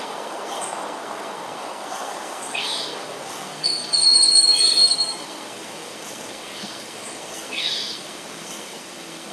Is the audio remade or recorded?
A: remade